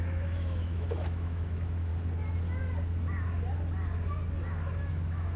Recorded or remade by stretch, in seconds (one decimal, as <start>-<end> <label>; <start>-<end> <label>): 0.0-1.9 remade; 1.9-4.9 recorded; 4.9-5.4 remade